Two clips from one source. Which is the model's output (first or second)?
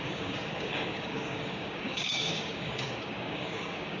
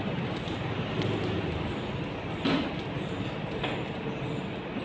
first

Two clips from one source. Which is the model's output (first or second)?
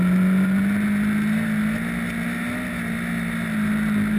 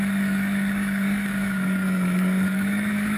second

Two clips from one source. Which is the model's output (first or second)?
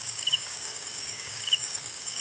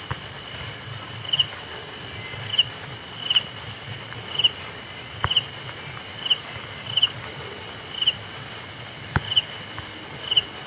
first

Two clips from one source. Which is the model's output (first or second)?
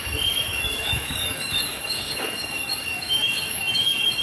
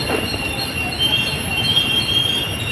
first